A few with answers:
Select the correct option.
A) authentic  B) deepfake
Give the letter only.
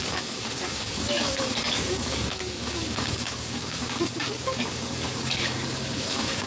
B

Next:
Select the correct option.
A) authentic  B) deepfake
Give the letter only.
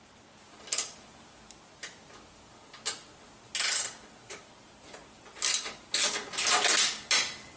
A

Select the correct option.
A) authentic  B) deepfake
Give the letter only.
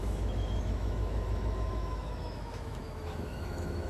B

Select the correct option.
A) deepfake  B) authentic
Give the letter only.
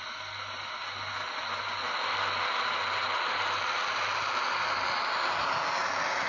B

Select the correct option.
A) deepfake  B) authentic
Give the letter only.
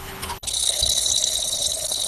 A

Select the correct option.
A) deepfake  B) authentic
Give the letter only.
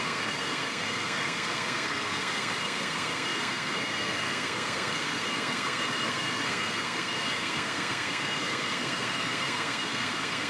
A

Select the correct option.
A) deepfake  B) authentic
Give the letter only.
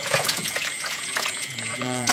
A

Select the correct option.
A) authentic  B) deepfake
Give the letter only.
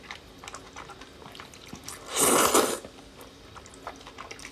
A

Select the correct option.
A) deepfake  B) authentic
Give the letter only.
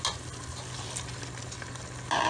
B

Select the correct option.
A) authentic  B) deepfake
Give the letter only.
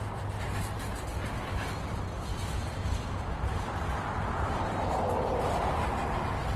A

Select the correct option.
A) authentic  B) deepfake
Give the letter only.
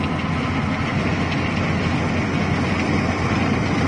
A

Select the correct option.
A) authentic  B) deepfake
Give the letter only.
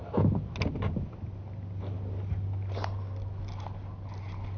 A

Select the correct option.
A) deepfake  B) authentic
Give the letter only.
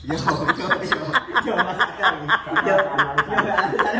B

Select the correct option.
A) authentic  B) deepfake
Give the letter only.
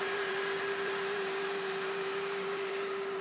B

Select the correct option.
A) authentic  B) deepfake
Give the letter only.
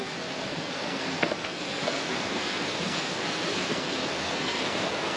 B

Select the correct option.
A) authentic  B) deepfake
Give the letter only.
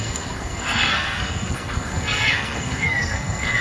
B